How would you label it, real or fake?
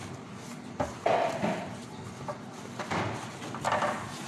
real